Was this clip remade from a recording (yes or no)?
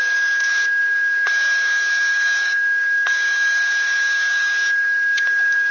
yes